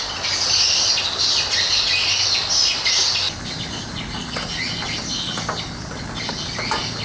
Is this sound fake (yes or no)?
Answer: no